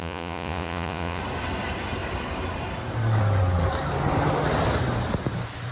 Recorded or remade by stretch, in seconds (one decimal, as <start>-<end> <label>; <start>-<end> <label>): 0.0-1.2 remade; 1.2-5.7 recorded